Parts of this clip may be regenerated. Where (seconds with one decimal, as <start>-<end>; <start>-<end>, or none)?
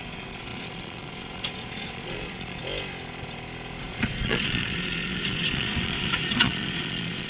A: 0.0-2.6; 3.8-7.3